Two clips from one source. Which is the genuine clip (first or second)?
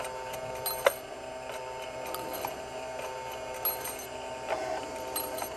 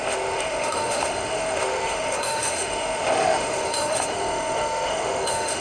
first